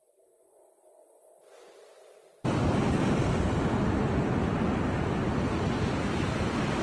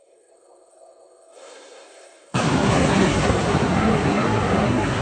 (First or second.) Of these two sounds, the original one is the first